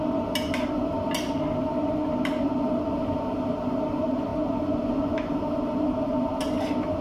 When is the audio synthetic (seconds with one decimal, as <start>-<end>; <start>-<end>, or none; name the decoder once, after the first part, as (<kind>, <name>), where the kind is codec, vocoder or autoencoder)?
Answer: none